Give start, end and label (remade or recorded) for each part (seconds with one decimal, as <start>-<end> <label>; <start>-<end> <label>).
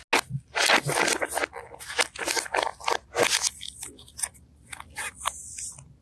0.0-6.0 recorded